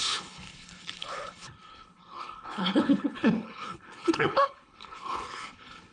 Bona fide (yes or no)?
no